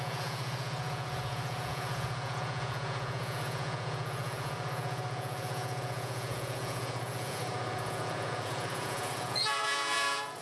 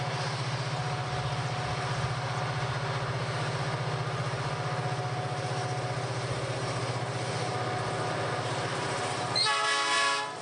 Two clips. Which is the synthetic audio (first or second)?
first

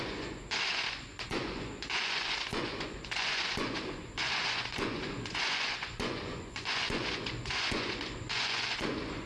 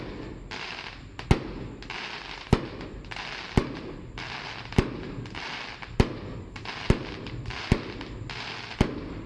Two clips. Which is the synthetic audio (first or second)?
first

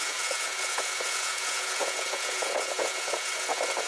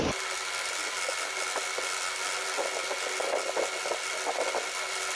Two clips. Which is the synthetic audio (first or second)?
first